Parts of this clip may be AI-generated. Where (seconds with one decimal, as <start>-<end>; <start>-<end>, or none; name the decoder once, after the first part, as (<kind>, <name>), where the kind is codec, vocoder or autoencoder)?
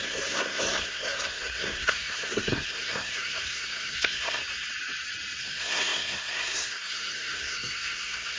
0.0-4.4 (codec, SNAC); 5.4-8.4